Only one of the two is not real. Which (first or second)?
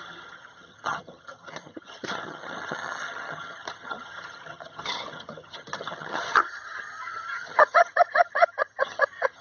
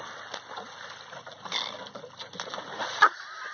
first